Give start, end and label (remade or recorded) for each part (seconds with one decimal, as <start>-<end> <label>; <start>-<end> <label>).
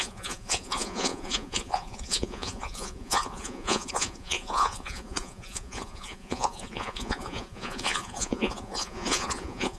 0.0-9.8 remade